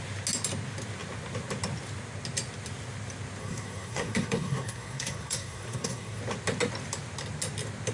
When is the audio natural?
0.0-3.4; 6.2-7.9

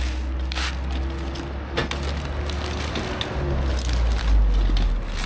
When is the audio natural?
0.0-5.3

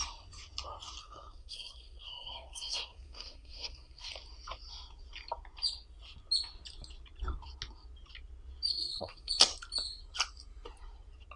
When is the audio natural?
0.0-1.0; 4.1-8.7; 9.3-11.4

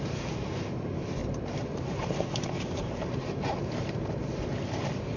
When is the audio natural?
0.0-1.2; 4.1-5.2

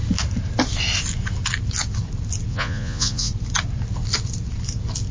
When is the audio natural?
0.0-2.5; 3.3-5.1